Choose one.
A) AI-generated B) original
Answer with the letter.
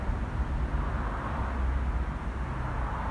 B